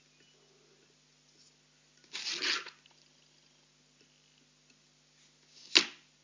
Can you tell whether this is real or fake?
real